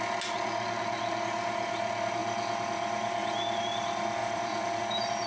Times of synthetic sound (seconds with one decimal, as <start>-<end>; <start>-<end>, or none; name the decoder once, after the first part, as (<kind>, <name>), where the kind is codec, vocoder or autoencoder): 4.2-4.8 (vocoder, BigVGAN v2)